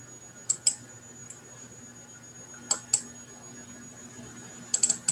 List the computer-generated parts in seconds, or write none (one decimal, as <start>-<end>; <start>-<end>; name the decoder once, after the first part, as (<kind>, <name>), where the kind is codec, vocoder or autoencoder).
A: 1.2-1.8 (vocoder, BigVGAN v2); 3.9-4.5